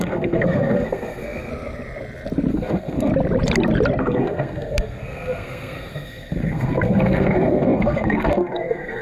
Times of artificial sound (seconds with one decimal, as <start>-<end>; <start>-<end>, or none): 0.0-1.5; 2.5-3.1; 4.0-9.0

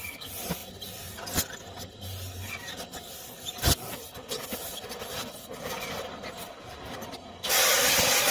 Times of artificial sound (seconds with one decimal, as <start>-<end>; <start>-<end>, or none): none

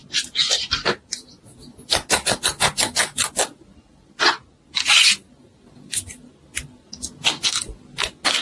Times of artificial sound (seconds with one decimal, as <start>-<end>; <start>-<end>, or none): none

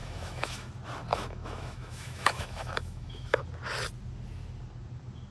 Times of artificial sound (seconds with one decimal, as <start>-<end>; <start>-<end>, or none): 0.0-0.7; 1.1-3.4